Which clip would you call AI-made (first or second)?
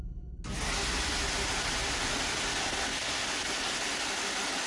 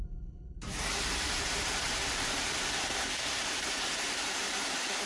second